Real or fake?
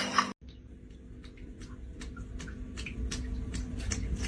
real